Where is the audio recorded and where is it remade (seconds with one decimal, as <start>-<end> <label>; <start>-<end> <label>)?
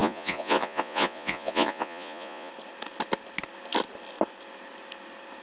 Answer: 0.0-2.5 remade; 2.5-5.4 recorded